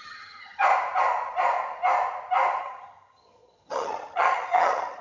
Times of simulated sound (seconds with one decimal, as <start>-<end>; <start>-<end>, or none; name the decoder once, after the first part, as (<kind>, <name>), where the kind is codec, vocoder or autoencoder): 0.0-0.6 (vocoder, HiFi-GAN); 2.6-5.0